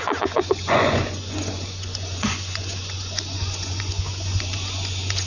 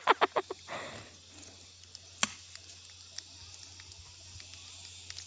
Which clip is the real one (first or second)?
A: second